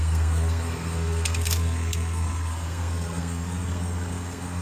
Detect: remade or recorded remade